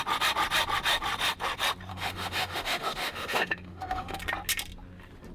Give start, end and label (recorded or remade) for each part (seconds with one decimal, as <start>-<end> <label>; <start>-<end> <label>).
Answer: 0.0-1.9 recorded; 1.9-4.2 remade; 4.2-5.3 recorded